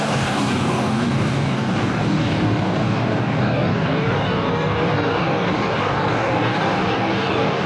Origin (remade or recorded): remade